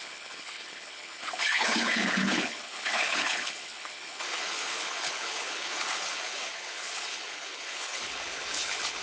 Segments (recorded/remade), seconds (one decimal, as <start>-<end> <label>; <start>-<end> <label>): 0.0-9.0 remade